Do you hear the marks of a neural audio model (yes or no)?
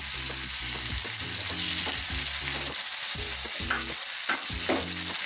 no